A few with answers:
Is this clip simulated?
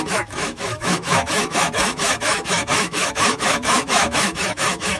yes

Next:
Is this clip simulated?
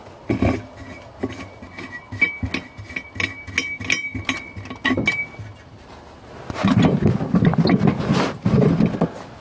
no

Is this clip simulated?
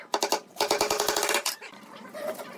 yes